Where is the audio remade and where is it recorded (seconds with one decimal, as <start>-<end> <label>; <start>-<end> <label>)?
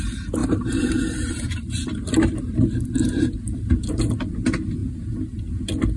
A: 0.0-0.4 recorded; 0.4-4.0 remade; 4.0-6.0 recorded